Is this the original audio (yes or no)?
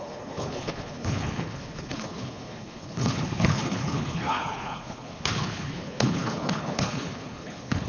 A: no